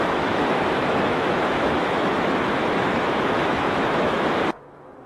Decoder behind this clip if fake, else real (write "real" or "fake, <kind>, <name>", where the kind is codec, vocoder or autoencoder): fake, autoencoder, DAC-VAE